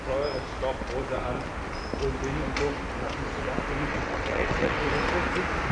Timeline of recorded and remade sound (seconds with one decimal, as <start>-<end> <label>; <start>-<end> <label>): 0.0-3.9 recorded; 3.9-4.8 remade; 4.8-5.7 recorded